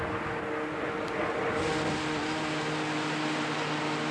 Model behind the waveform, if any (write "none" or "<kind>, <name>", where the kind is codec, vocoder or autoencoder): none